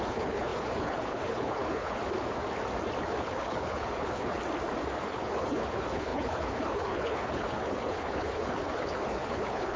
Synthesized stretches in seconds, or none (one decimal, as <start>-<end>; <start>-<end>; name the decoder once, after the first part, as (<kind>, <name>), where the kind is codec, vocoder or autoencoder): 0.0-2.0 (codec, HILCodec); 3.0-4.4; 5.0-9.8